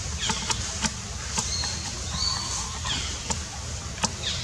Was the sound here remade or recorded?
recorded